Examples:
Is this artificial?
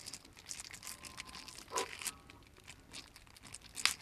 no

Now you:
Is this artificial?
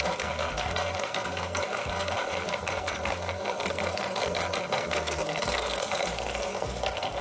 yes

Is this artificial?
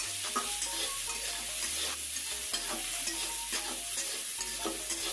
no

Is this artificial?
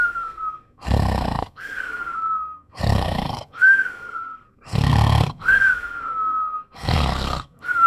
yes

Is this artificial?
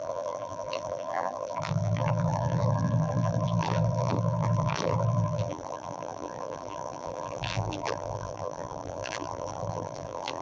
yes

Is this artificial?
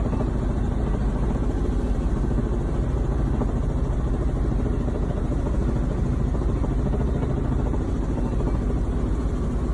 no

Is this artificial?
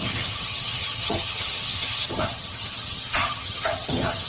yes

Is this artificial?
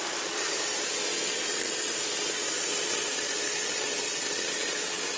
no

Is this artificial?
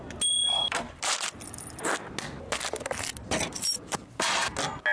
no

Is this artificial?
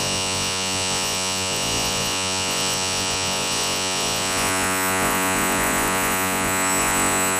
yes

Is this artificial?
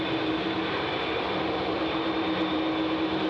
yes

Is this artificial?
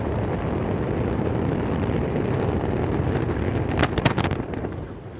no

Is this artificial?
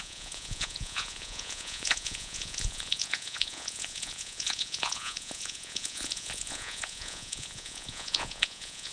yes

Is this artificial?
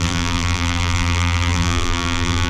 yes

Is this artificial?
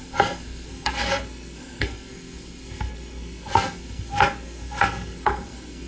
yes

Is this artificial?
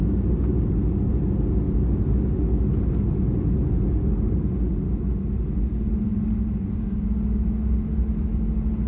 no